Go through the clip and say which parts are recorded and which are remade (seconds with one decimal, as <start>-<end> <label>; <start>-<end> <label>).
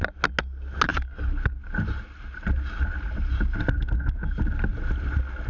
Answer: 0.0-5.5 recorded